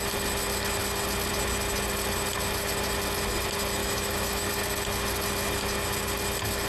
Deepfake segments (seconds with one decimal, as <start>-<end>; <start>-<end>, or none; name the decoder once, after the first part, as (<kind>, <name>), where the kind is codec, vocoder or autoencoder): 3.8-4.5 (autoencoder, DAC-VAE)